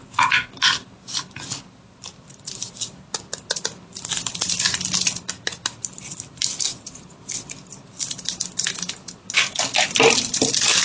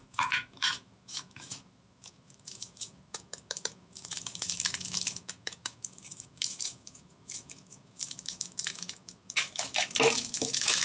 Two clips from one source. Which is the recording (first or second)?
first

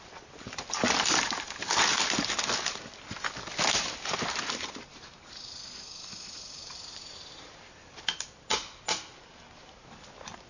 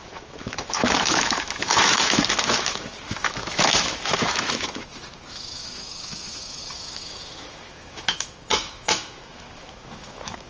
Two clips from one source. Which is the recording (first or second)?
first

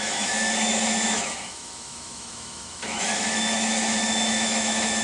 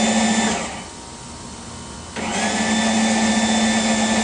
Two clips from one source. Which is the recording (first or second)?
second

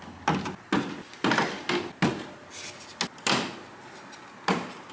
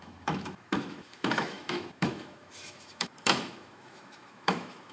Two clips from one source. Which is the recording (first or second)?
first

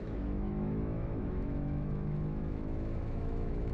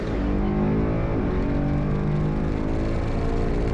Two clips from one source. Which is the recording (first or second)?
second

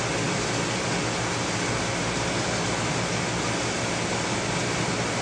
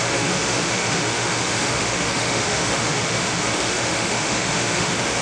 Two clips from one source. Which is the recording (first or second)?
first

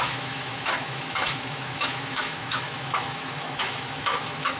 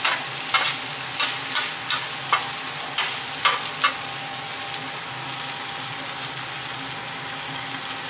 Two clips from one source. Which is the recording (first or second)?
second